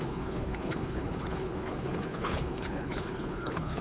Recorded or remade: remade